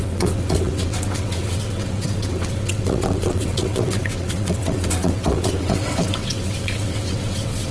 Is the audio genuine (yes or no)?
no